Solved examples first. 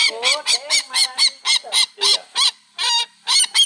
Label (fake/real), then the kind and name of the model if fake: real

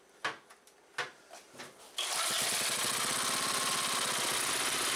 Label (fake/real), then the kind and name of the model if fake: real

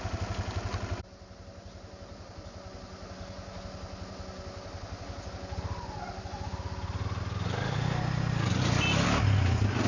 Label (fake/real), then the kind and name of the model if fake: real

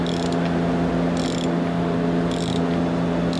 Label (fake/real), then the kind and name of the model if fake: real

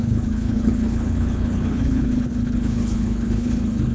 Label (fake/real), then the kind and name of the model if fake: fake, codec, HILCodec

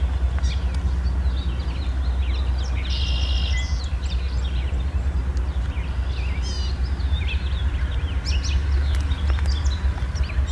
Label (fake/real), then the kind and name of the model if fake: real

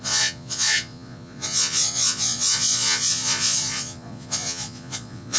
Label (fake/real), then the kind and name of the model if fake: fake, vocoder, Vocos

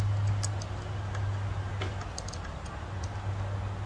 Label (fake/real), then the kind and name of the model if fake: real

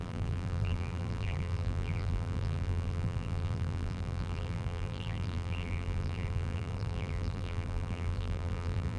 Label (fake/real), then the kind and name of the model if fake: fake, vocoder, BigVGAN v2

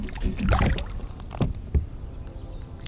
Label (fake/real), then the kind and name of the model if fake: real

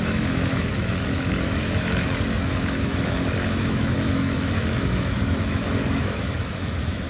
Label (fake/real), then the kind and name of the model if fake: fake, autoencoder, DAC-VAE